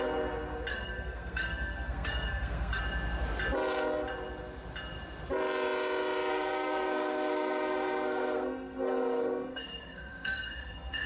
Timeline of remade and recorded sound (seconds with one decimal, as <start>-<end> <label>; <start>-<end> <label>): 0.0-0.7 recorded; 0.7-2.8 remade; 2.8-6.3 recorded; 6.3-11.1 remade